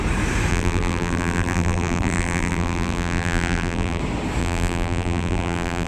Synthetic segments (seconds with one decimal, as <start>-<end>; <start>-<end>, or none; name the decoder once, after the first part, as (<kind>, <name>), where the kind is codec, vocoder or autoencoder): 0.5-4.0 (vocoder, BigVGAN v2); 4.4-5.9